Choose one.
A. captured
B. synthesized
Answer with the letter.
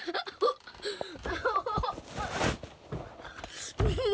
A